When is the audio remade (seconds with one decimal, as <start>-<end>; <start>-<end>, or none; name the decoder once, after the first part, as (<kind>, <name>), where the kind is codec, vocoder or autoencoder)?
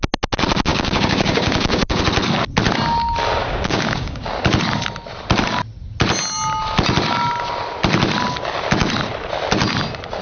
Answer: 0.7-2.0 (codec, DAC); 3.4-4.3